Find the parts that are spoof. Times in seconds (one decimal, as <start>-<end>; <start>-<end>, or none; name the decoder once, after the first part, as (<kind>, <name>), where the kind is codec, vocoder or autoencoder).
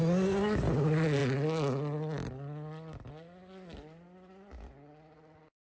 none